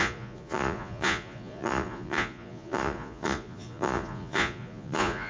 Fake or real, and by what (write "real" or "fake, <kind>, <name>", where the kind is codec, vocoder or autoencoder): fake, vocoder, Vocos